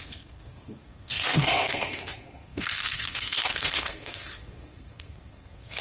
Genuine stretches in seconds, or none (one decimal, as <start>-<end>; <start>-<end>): none